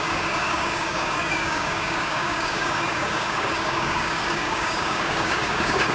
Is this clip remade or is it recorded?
remade